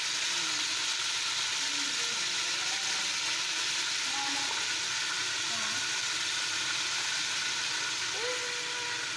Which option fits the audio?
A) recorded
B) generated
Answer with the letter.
A